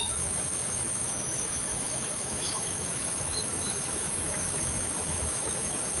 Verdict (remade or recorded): remade